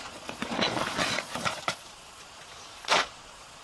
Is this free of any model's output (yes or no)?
no